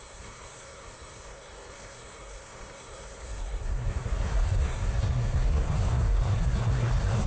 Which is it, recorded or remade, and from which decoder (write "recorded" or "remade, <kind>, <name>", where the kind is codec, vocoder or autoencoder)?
remade, codec, SNAC